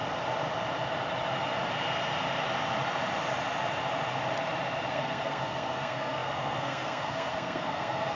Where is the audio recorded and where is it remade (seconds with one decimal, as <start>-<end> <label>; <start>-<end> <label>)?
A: 0.0-4.9 recorded; 4.9-8.1 remade